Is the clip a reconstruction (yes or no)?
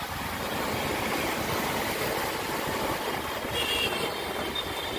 no